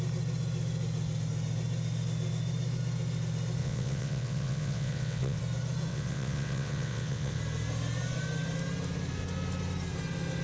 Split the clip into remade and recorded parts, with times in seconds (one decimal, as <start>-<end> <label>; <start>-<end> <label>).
0.0-3.6 recorded; 3.6-5.4 remade; 5.4-5.9 recorded; 5.9-7.4 remade; 7.4-10.4 recorded